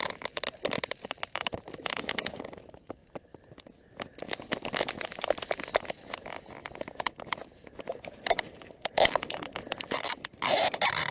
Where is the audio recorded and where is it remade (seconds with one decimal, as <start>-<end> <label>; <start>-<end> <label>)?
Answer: 0.0-3.0 remade; 3.0-8.1 recorded; 8.1-11.1 remade